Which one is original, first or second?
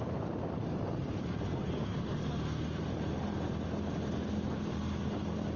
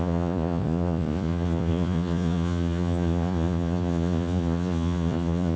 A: first